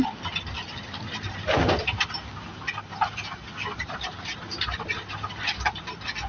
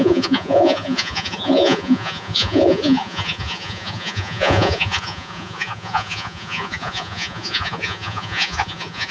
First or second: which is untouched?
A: first